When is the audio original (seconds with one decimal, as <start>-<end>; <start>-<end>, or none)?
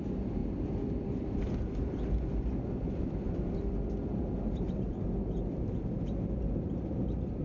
0.0-0.4; 3.3-7.4